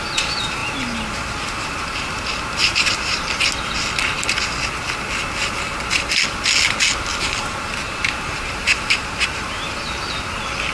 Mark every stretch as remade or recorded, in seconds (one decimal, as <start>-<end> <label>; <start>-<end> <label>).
0.0-2.6 recorded; 2.6-3.3 remade; 3.3-7.1 recorded; 7.1-10.2 remade; 10.2-10.7 recorded